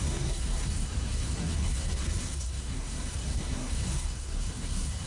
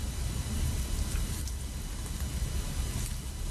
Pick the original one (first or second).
second